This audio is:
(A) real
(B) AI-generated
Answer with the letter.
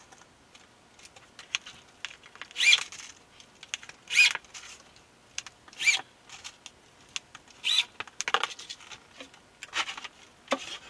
A